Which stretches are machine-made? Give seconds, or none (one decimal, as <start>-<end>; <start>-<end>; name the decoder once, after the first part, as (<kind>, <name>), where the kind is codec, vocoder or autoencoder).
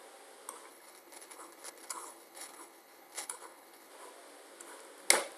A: 0.7-3.9 (codec, HILCodec)